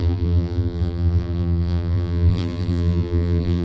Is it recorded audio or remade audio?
remade